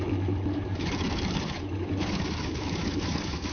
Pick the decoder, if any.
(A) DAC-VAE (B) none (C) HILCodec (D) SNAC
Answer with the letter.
A